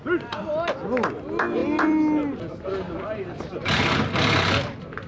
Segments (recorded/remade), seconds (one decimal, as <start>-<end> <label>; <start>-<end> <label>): 0.0-5.1 recorded